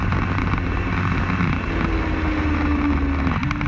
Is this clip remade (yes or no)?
no